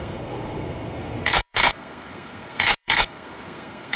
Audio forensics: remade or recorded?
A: remade